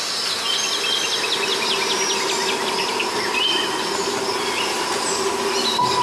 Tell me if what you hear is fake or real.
real